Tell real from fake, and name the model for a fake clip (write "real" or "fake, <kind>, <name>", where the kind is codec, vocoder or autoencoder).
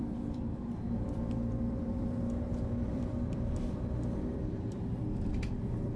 fake, vocoder, BigVGAN v2